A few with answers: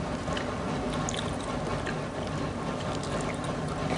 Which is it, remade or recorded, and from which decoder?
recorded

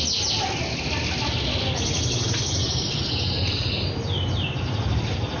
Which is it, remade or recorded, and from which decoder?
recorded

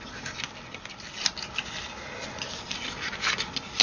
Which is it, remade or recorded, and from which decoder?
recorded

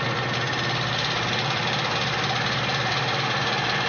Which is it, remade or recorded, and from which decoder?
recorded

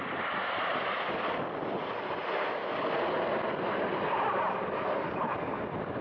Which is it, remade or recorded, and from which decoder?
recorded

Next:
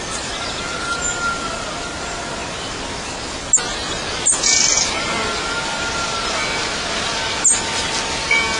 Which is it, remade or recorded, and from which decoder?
recorded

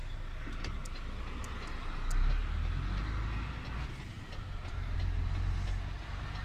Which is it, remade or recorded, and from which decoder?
recorded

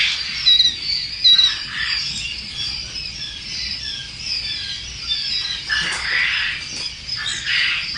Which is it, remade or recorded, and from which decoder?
recorded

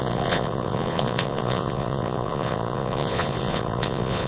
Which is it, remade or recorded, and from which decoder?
remade, vocoder, Vocos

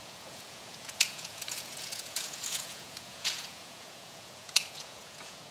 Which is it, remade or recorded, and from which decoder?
remade, vocoder, Vocos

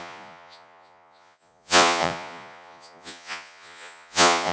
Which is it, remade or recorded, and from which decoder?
remade, vocoder, Vocos